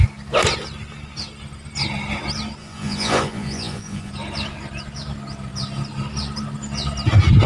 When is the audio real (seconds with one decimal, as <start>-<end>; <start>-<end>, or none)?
0.0-2.6; 4.1-7.5